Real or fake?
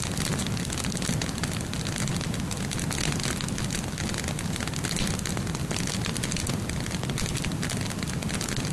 real